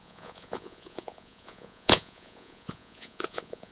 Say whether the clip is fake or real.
fake